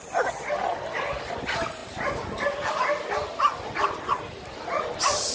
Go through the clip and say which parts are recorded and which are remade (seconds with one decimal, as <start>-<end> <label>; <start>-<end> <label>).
0.0-5.3 recorded

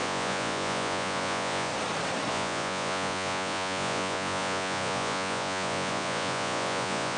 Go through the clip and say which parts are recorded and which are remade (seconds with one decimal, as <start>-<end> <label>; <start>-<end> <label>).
0.0-1.7 remade; 1.7-2.3 recorded; 2.3-7.2 remade

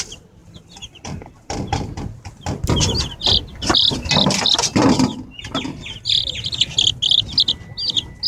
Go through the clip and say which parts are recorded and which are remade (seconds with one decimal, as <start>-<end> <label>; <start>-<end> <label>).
0.0-0.4 recorded; 0.4-1.8 remade; 1.8-3.5 recorded; 3.5-4.1 remade; 4.1-8.3 recorded

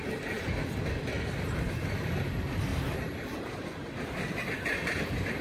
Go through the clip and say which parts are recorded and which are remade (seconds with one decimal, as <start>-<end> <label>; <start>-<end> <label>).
0.0-2.7 recorded; 2.7-3.4 remade; 3.4-5.4 recorded

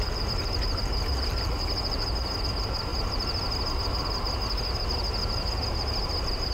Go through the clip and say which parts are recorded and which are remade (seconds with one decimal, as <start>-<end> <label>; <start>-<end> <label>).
0.0-6.5 recorded

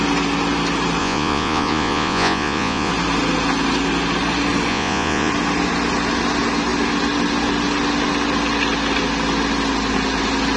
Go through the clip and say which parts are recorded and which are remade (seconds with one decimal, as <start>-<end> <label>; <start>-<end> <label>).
0.0-1.0 recorded; 1.0-2.9 remade; 2.9-4.7 recorded; 4.7-5.3 remade; 5.3-10.6 recorded